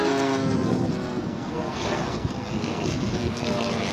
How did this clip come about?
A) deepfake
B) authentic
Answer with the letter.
A